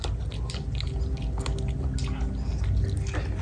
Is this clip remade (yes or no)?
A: no